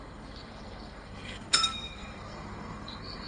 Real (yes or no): no